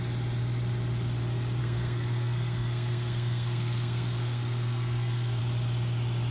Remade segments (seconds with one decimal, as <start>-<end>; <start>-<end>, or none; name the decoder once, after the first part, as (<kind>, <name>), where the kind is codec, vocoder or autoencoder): 1.6-5.4 (codec, SNAC)